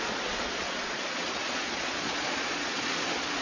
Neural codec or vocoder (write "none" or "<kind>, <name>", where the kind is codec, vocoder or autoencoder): vocoder, Vocos